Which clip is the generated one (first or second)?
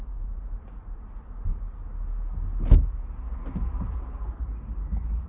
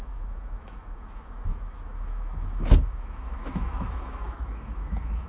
second